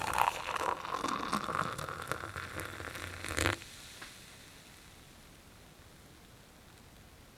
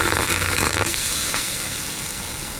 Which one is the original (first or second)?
first